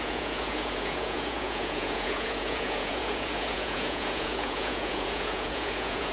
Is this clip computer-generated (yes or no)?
yes